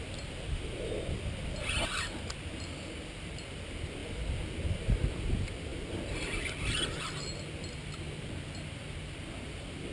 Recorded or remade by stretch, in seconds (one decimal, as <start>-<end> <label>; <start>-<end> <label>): 0.0-9.9 recorded